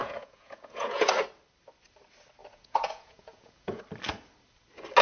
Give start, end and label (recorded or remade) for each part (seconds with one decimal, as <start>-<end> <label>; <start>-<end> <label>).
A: 0.0-1.1 remade; 1.1-2.4 recorded; 2.4-3.8 remade; 3.8-5.0 recorded